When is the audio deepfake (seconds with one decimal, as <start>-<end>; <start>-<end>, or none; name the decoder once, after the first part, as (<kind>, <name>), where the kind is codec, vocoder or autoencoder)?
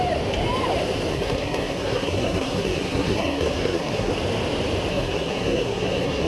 1.1-4.1 (codec, SNAC); 4.9-6.3